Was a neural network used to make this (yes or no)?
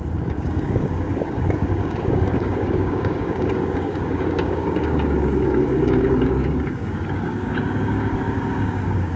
yes